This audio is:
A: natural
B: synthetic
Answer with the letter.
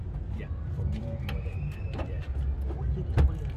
A